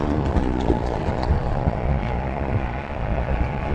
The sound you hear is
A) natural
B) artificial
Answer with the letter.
B